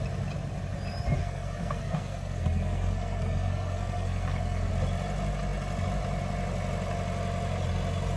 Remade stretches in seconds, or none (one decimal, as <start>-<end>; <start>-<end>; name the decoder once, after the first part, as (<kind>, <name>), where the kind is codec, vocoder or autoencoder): 1.2-4.7 (codec, SNAC)